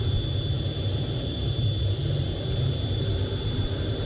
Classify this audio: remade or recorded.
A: recorded